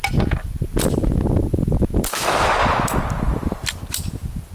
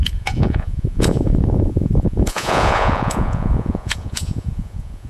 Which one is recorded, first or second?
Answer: first